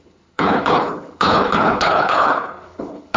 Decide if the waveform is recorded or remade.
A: remade